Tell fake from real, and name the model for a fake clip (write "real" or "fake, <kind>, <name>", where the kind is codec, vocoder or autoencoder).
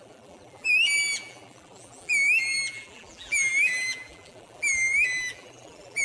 fake, vocoder, BigVGAN v2